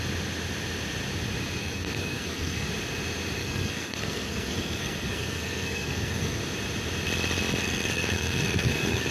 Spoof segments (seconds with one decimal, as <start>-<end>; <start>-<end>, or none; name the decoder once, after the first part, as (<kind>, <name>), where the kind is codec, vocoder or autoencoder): 1.6-2.7 (codec, SNAC); 3.4-6.4; 7.6-9.1